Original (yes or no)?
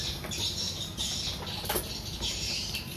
yes